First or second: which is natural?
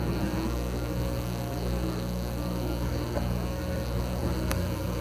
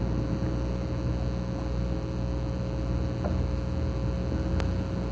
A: second